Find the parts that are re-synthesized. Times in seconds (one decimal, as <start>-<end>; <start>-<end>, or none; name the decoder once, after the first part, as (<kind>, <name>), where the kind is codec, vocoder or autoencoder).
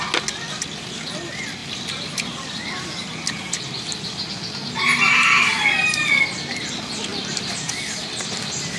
1.6-3.6 (vocoder, BigVGAN v2); 5.5-6.1; 7.1-7.7